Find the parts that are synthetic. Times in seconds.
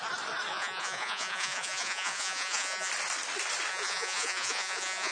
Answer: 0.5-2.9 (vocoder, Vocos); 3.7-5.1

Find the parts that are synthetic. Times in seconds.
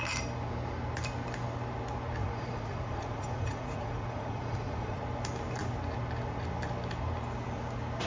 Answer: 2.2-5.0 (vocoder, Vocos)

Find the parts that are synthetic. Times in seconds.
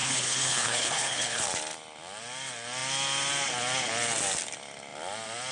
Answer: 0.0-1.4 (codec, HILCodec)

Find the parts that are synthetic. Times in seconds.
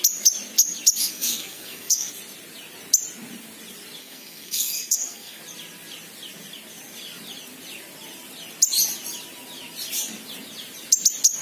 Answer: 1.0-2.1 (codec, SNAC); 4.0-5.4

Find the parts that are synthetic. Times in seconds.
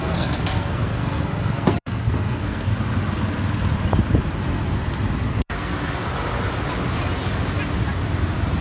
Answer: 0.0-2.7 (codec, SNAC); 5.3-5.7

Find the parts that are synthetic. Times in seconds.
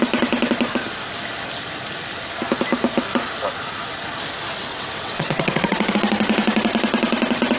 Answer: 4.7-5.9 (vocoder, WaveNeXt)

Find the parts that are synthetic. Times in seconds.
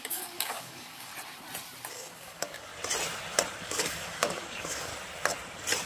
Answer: 0.0-1.1 (codec, DAC); 1.9-2.7; 3.6-4.9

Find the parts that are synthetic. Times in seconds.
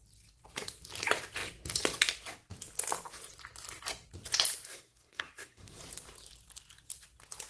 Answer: 4.7-5.8 (codec, SNAC)